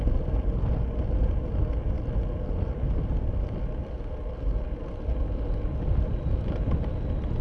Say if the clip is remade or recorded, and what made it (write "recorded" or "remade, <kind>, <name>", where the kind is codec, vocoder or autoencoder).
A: recorded